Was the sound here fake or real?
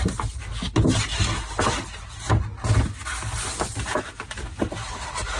real